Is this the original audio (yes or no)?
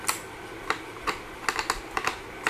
yes